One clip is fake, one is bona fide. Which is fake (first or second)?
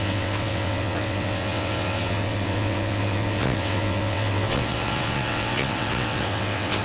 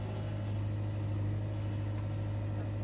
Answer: first